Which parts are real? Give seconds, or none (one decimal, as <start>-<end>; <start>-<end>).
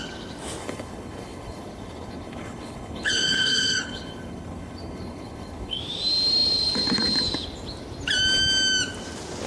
0.0-0.6; 5.8-9.5